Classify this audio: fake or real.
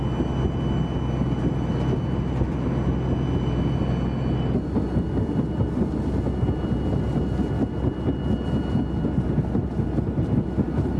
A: real